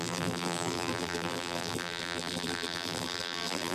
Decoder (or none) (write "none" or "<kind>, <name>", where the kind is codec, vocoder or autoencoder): vocoder, BigVGAN v2